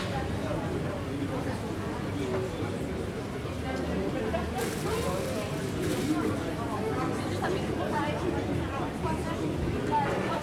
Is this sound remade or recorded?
recorded